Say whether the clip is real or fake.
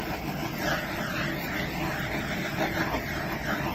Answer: real